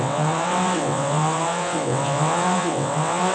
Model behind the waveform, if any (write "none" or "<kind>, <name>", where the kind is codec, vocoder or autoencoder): vocoder, WaveNeXt